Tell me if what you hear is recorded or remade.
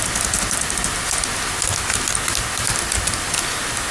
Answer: recorded